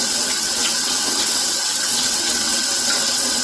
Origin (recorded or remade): remade